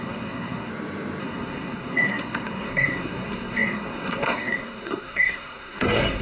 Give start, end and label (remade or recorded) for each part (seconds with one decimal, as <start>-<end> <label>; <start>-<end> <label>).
0.0-0.7 remade; 0.7-1.2 recorded; 1.2-6.2 remade